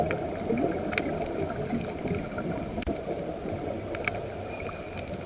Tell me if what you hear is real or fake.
real